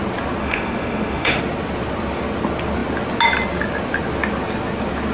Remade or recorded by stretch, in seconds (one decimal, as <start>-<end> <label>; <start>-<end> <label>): 0.0-0.4 recorded; 0.4-1.4 remade; 1.4-5.1 recorded